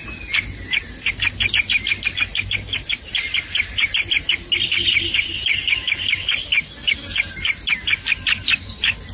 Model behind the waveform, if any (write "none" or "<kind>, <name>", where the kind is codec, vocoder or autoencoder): none